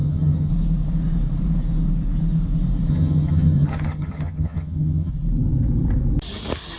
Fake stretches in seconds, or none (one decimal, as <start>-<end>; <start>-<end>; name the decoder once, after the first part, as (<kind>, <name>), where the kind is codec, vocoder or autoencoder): 0.0-0.5 (vocoder, HiFi-GAN); 2.9-5.1